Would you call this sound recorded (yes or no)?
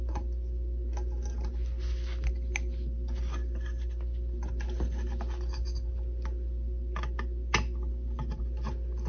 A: yes